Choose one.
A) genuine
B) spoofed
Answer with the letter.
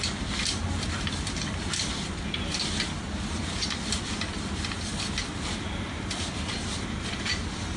B